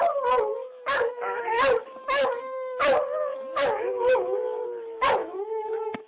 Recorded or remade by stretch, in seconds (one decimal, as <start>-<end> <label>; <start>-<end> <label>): 0.0-0.5 recorded; 0.5-1.4 remade; 1.4-2.0 recorded; 2.0-2.8 remade; 2.8-3.3 recorded; 3.3-3.9 remade; 3.9-5.2 recorded; 5.2-6.1 remade